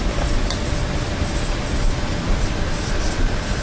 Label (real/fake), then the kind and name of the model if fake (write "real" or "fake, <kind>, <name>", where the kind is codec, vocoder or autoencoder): real